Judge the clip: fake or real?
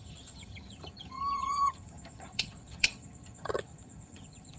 fake